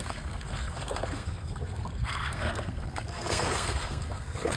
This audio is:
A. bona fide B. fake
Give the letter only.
B